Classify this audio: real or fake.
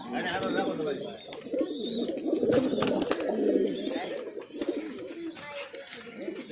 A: real